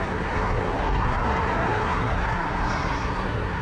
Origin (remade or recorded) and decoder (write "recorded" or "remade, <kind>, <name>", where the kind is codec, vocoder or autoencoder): remade, codec, SNAC